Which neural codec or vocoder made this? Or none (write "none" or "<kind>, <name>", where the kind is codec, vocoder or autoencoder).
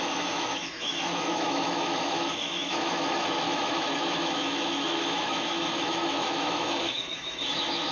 autoencoder, DAC-VAE